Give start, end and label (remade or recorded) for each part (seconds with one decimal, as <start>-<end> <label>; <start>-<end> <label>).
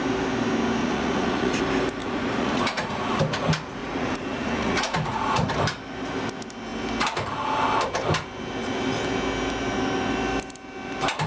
0.0-0.8 recorded; 0.8-1.6 remade; 1.6-2.0 recorded; 2.0-3.2 remade; 3.2-3.8 recorded; 3.8-5.5 remade; 5.5-11.3 recorded